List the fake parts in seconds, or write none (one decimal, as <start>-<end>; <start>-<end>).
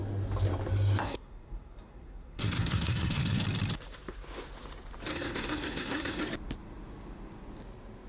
1.0-3.4; 5.1-6.2